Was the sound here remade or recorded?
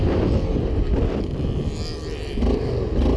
recorded